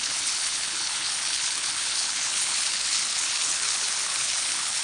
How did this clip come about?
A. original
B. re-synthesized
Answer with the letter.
B